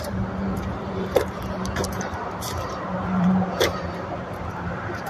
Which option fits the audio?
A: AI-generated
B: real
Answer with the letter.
A